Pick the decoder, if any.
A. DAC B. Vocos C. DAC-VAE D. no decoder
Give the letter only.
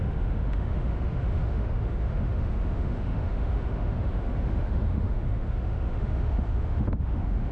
C